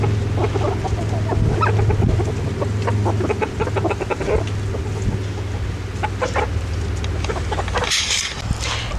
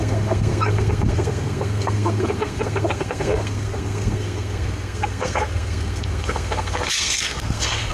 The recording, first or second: first